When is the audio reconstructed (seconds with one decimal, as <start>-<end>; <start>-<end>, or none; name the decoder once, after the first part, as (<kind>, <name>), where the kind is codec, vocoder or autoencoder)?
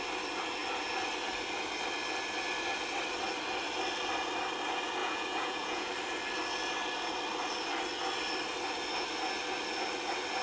5.0-5.9 (vocoder, Vocos)